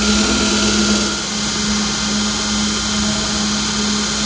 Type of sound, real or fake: real